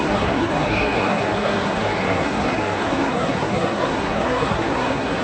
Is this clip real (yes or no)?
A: no